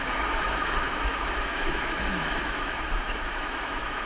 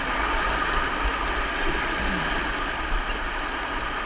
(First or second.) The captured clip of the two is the second